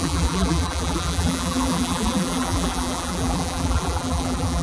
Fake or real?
fake